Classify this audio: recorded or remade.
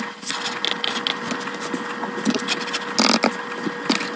recorded